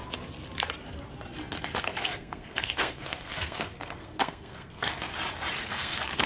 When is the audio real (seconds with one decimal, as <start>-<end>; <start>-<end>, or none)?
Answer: 0.0-1.8; 5.1-5.7